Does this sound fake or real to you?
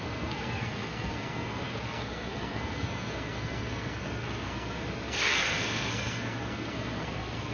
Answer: fake